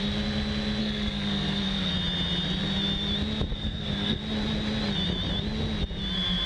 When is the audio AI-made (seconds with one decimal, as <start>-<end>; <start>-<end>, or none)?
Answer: 0.8-1.9; 3.5-4.2